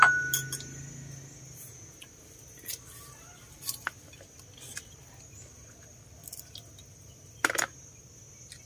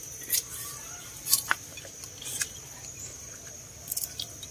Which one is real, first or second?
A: first